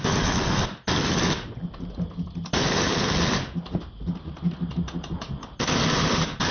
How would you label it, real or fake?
real